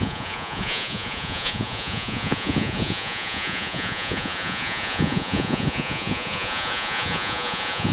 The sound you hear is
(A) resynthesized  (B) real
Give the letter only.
A